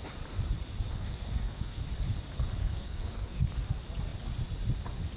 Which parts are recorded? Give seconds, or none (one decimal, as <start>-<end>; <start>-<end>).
0.0-0.9; 1.8-2.6; 3.4-5.2